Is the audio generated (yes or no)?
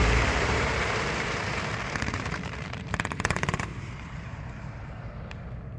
yes